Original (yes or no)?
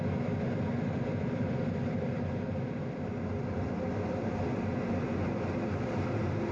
yes